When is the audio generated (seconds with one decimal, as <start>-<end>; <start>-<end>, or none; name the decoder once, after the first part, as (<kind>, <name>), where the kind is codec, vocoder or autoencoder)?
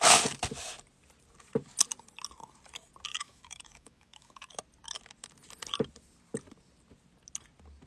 3.1-4.5 (autoencoder, DAC-VAE)